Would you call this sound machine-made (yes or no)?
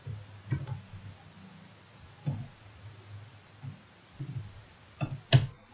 no